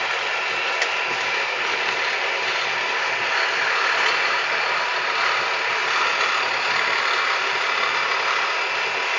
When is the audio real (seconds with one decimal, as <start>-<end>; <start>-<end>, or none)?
0.0-9.2